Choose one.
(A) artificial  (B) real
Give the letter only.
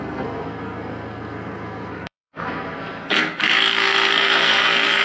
A